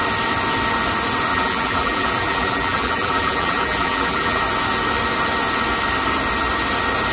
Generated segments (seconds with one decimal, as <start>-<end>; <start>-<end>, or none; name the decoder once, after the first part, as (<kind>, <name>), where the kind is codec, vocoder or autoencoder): 1.3-4.4 (vocoder, BigVGAN v2)